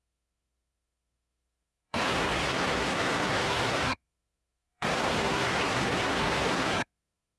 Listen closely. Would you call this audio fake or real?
fake